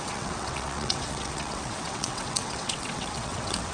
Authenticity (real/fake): fake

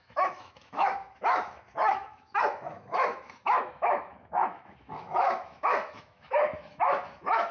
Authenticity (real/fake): fake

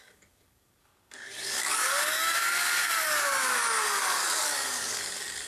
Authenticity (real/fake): fake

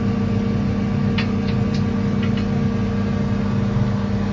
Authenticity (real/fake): real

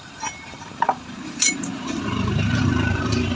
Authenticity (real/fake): fake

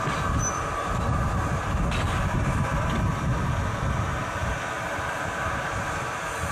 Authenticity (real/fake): real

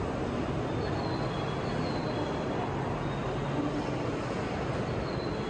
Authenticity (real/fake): real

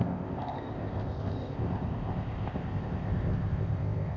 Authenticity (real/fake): fake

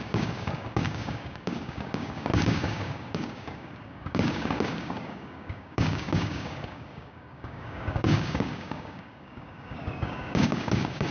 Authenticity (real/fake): fake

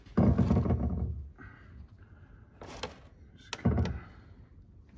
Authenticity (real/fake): real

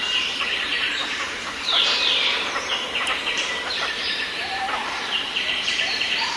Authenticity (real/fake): fake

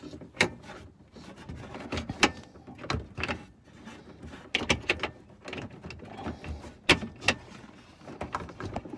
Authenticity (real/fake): real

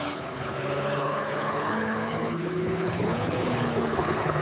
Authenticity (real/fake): fake